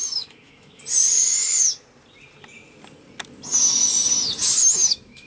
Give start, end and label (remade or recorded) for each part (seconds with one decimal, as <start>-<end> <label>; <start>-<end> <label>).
0.0-0.8 remade; 0.8-4.6 recorded; 4.6-5.3 remade